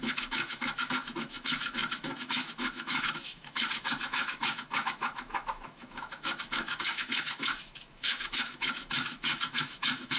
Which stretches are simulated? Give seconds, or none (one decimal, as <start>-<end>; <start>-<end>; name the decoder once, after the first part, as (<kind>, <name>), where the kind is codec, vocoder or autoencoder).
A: 0.0-10.2 (autoencoder, DAC-VAE)